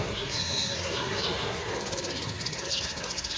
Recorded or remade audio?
remade